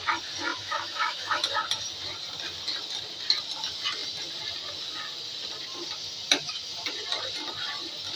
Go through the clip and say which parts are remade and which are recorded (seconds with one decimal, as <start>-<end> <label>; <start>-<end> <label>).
0.0-0.5 recorded; 0.5-1.5 remade; 1.5-8.2 recorded